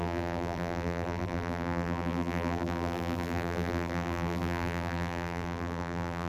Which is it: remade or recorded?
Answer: remade